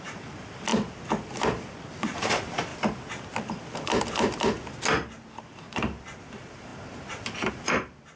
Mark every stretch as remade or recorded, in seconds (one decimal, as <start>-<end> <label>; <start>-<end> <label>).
0.0-0.7 remade; 0.7-1.9 recorded; 1.9-2.7 remade; 2.7-5.4 recorded; 5.4-8.2 remade